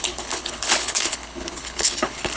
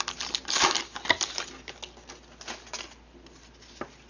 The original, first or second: second